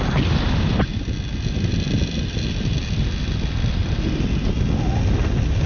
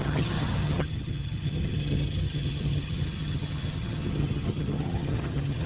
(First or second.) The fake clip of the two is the second